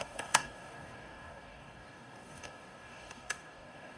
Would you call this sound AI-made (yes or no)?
yes